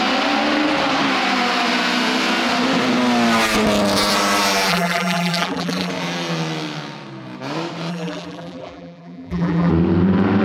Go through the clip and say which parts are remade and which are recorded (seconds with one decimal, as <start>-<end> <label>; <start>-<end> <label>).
0.0-4.7 recorded; 4.7-5.9 remade; 5.9-7.9 recorded; 7.9-9.7 remade; 9.7-10.4 recorded